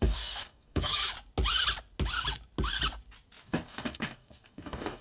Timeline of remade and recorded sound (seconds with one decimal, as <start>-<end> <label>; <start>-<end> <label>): 0.0-0.9 remade; 0.9-3.4 recorded; 3.4-5.0 remade